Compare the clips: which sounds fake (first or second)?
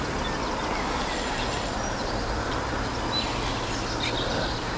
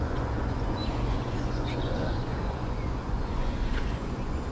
second